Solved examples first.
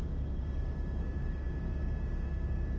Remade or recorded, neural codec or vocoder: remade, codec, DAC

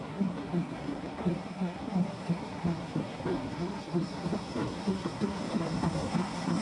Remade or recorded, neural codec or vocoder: remade, codec, SNAC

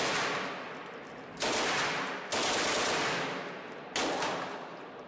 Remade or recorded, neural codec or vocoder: recorded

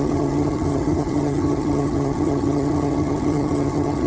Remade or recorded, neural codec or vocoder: remade, vocoder, HiFi-GAN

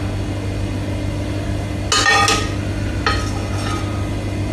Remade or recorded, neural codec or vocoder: recorded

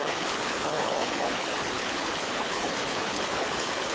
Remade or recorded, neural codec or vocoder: remade, codec, HILCodec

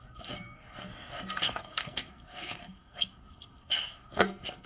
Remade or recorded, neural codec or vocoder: remade, codec, SNAC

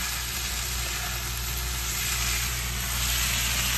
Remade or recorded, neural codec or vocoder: recorded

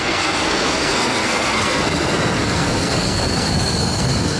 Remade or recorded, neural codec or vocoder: remade, codec, SNAC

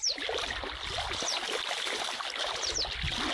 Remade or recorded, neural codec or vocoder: recorded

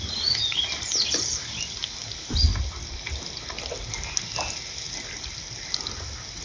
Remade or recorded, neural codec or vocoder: recorded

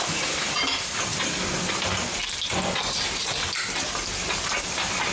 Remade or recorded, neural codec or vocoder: recorded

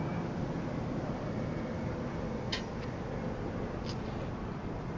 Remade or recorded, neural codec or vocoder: recorded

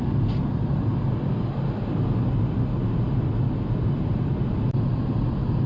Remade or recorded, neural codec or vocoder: recorded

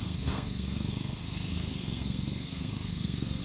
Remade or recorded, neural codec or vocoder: remade, codec, SNAC